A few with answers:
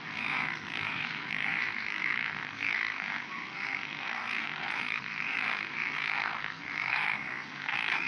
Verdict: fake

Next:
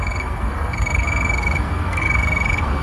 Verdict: fake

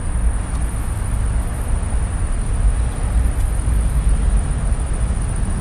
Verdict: real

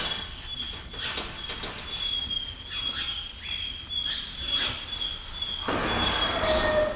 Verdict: real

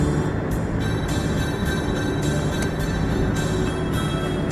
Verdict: real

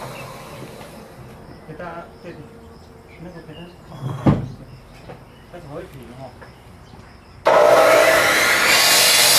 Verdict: real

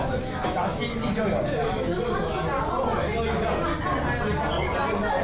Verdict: real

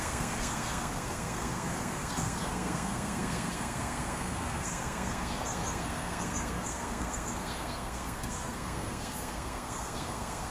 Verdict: fake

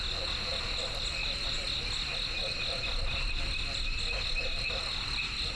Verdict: real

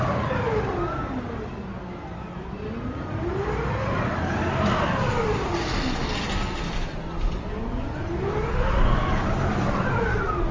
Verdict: real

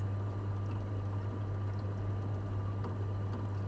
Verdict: real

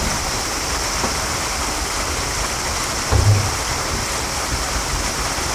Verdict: real